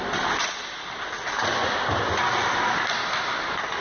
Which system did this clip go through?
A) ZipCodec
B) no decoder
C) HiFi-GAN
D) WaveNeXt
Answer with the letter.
B